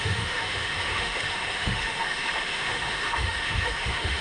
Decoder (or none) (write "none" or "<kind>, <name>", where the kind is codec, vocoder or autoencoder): autoencoder, DAC-VAE